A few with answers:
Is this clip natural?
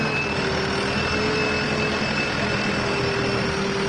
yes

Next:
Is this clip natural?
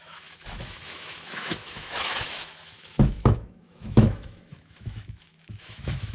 no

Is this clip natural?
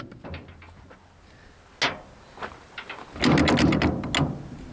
yes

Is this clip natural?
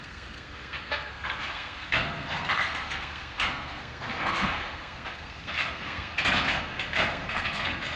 no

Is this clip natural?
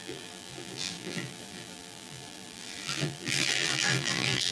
no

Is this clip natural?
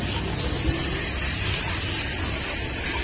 yes